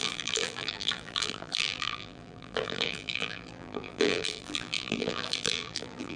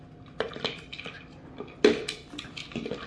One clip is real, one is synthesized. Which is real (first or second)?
second